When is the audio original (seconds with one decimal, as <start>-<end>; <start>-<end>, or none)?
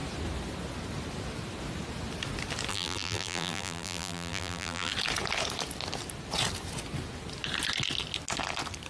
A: 0.0-2.7; 4.9-8.9